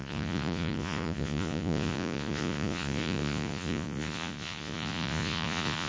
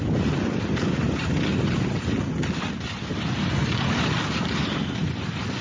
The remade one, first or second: first